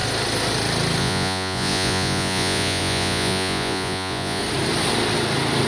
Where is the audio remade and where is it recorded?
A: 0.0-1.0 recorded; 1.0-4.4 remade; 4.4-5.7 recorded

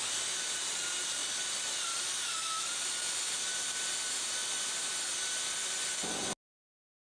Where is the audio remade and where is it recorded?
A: 0.0-4.4 recorded; 4.4-5.1 remade; 5.1-5.6 recorded; 5.6-6.2 remade; 6.2-7.1 recorded

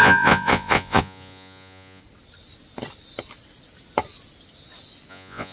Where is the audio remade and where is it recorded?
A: 0.0-2.0 remade; 2.0-5.1 recorded; 5.1-5.5 remade

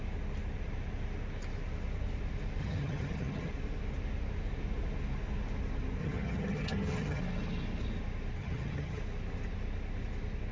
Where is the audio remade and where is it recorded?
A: 0.0-2.6 recorded; 2.6-3.5 remade; 3.5-6.0 recorded; 6.0-7.2 remade; 7.2-8.4 recorded; 8.4-9.0 remade; 9.0-10.5 recorded

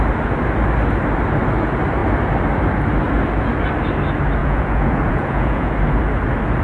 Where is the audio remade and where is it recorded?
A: 0.0-4.4 recorded; 4.4-5.7 remade; 5.7-6.6 recorded